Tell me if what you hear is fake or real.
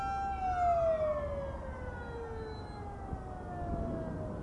real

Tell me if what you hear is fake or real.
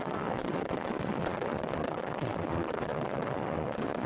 fake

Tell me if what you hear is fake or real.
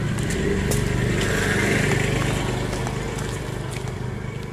real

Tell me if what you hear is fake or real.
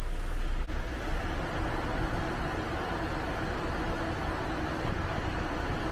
real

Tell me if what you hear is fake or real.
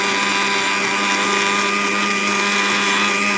real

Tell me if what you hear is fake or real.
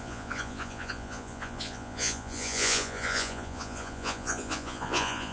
fake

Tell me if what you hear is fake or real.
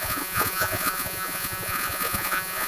fake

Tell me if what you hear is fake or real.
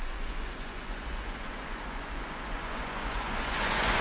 fake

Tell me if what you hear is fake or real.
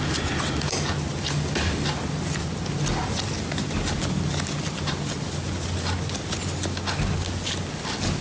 real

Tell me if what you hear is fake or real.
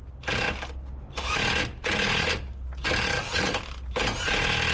real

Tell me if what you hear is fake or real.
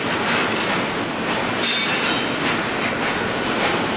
real